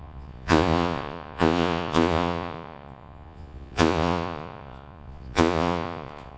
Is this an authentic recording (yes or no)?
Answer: no